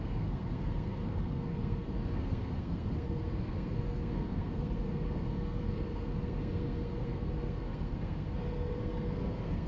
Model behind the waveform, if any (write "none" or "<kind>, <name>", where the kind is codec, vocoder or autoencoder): codec, SNAC